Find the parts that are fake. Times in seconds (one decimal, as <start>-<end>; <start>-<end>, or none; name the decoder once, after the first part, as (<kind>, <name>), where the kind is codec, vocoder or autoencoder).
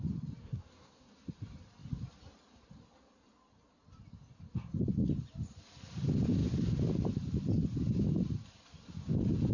0.4-1.1 (codec, SNAC)